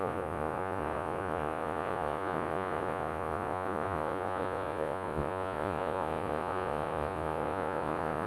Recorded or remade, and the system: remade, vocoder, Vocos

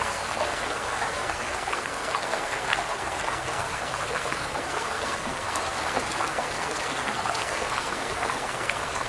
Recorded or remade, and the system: remade, codec, SNAC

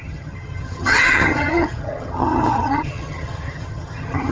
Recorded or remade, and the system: remade, vocoder, HiFi-GAN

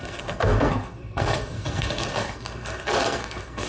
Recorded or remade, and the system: remade, codec, SNAC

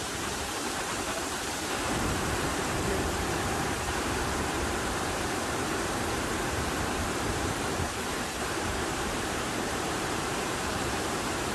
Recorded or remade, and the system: remade, vocoder, BigVGAN v2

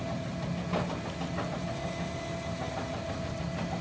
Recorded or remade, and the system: recorded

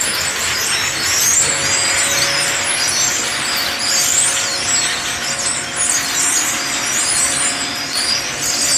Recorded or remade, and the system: recorded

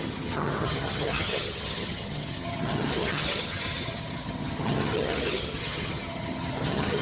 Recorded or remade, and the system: remade, vocoder, HiFi-GAN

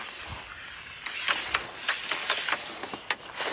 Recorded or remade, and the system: recorded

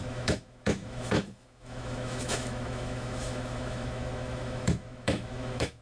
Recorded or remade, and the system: remade, autoencoder, DAC-VAE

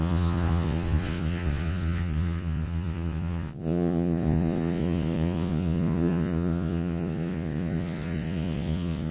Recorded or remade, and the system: remade, vocoder, Vocos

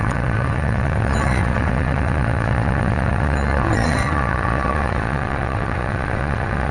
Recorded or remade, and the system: remade, vocoder, WaveNeXt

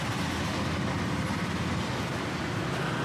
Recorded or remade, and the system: recorded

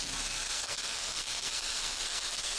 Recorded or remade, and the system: remade, codec, SNAC